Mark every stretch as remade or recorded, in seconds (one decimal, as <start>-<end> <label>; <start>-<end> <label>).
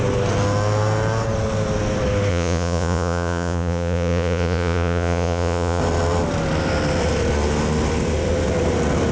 0.0-2.3 recorded; 2.3-5.8 remade; 5.8-9.1 recorded